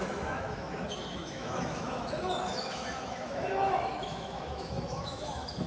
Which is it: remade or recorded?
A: remade